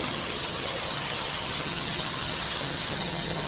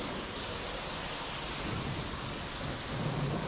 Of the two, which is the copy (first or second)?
first